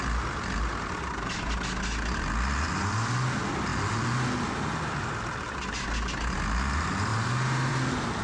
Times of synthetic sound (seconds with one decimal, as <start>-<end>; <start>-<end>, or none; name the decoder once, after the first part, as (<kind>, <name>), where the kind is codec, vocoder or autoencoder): none